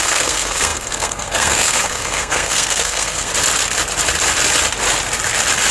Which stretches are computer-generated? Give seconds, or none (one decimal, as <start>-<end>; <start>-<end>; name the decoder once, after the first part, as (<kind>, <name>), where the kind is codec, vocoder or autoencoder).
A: 0.0-3.3 (codec, SNAC)

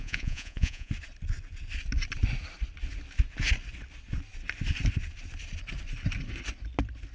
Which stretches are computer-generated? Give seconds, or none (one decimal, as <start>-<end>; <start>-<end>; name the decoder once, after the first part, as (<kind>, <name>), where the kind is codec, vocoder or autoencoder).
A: 0.0-0.9 (vocoder, Vocos)

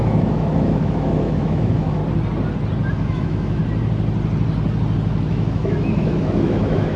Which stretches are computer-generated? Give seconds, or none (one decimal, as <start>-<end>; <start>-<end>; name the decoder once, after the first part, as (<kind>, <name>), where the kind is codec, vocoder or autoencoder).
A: 0.0-2.0 (autoencoder, DAC-VAE); 2.9-3.6; 5.3-7.0

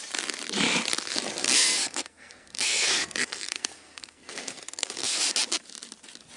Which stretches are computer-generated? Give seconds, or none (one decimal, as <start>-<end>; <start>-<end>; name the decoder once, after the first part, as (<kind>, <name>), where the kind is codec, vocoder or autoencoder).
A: 1.4-5.2 (codec, SNAC)

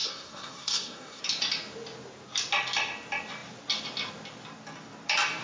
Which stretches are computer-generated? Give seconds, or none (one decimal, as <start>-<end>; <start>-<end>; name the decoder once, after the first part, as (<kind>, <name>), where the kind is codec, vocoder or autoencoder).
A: 0.0-1.2 (codec, SNAC)

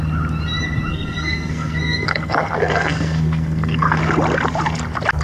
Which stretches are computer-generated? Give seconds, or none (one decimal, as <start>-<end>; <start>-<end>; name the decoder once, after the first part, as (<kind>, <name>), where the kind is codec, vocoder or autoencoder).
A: 0.9-4.0 (codec, SNAC)

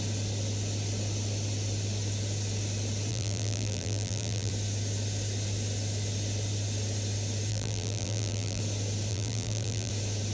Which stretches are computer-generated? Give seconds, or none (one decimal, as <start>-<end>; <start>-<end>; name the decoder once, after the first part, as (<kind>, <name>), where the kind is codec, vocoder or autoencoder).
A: 3.1-4.5 (vocoder, BigVGAN v2); 7.5-8.6; 9.1-9.9

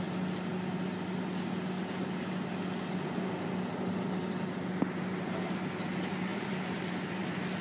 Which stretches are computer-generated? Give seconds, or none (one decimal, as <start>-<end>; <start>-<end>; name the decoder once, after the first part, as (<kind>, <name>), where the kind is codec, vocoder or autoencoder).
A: 6.3-7.6 (vocoder, BigVGAN v2)